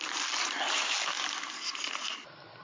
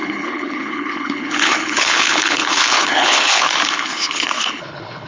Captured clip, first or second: first